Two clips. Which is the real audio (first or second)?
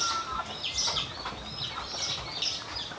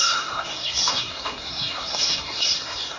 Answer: first